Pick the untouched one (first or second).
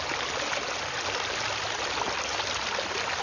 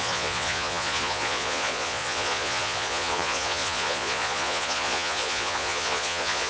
first